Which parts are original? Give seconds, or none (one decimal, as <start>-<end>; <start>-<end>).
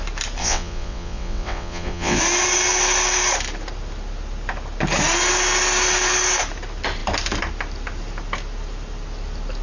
0.0-0.4; 2.2-9.6